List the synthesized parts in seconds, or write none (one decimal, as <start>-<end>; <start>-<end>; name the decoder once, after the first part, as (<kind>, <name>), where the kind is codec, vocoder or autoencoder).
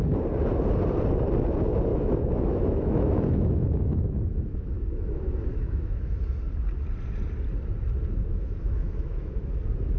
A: 1.9-6.2 (autoencoder, DAC-VAE); 8.3-9.5